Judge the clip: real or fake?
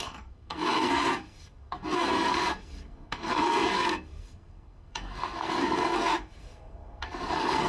fake